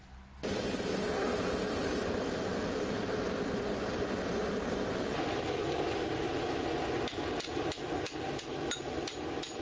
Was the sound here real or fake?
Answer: real